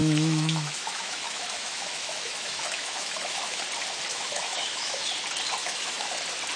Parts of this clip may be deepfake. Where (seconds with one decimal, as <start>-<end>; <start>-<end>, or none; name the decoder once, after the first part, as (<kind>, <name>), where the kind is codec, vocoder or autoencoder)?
0.0-3.6 (autoencoder, DAC-VAE); 4.1-5.1; 5.6-6.1